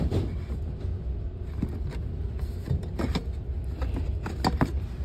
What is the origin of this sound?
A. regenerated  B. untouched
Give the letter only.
B